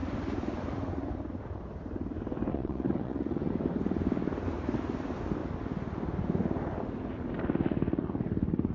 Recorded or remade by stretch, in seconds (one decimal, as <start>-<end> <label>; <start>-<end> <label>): 0.0-2.5 recorded; 2.5-3.5 remade; 3.5-8.7 recorded